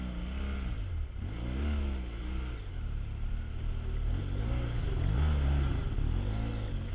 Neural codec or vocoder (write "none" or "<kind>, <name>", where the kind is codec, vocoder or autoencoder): none